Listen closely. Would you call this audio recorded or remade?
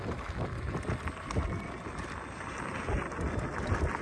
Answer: recorded